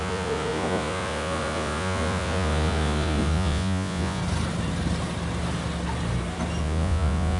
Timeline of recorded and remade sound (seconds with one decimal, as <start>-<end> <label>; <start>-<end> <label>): 0.0-4.2 remade; 4.2-6.6 recorded; 6.6-7.4 remade